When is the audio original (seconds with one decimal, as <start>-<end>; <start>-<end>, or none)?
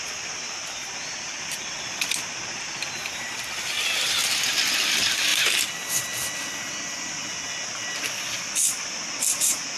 0.0-9.8